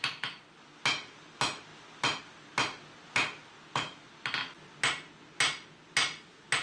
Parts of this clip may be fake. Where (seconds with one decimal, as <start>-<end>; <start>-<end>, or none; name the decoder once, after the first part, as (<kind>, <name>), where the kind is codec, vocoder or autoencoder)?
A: none